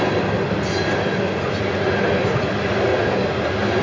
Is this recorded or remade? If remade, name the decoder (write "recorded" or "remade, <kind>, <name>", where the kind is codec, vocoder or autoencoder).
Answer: recorded